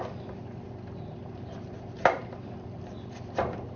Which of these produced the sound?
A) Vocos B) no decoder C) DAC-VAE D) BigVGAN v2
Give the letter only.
B